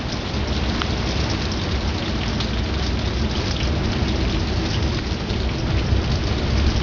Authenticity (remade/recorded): recorded